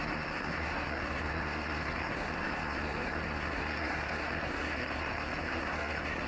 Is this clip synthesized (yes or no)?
yes